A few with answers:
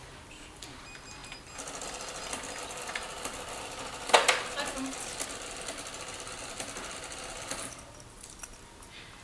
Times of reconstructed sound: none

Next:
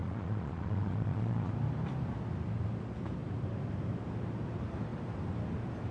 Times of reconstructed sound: 0.0-1.5 (vocoder, Vocos)

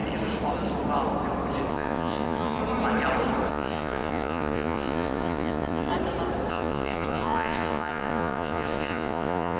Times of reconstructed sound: 1.7-2.6 (vocoder, Vocos); 3.5-5.9; 6.5-9.6

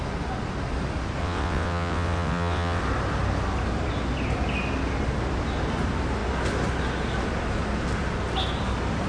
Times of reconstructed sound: 1.2-2.8 (vocoder, WaveNeXt)

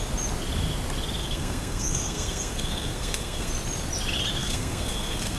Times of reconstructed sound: 1.2-3.5 (codec, SNAC); 4.4-5.4

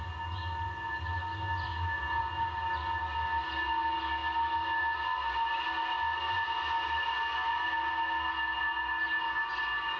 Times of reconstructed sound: none

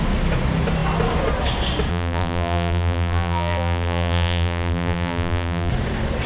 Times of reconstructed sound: 1.9-5.7 (vocoder, BigVGAN v2)

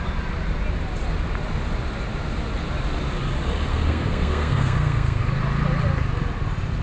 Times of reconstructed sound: 3.7-5.2 (codec, SNAC)